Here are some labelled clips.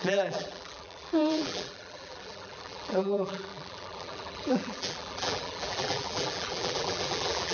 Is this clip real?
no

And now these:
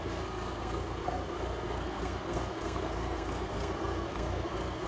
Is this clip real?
no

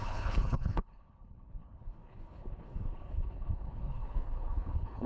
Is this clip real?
no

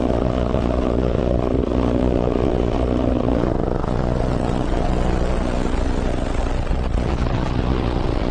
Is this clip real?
no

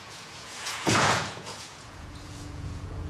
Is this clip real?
no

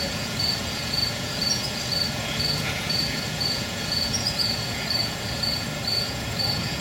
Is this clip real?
no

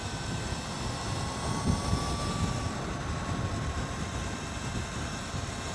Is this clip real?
yes